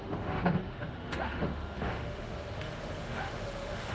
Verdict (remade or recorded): remade